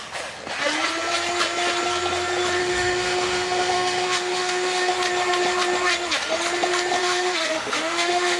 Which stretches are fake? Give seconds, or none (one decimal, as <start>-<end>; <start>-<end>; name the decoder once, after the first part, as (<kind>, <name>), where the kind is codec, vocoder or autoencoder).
2.6-4.9 (autoencoder, DAC-VAE); 7.0-8.4